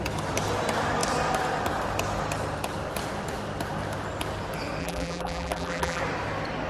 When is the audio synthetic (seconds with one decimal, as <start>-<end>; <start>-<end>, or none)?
4.8-6.0